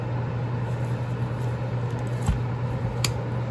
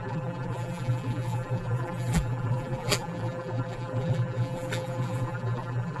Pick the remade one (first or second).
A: second